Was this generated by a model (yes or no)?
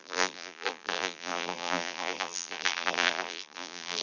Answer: yes